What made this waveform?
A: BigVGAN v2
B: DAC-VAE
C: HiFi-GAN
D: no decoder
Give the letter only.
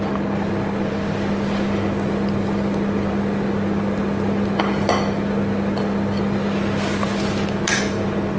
D